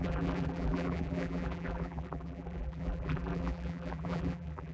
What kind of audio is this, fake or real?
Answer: fake